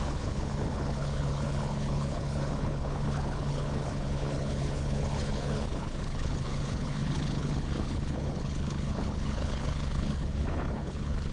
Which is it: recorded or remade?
remade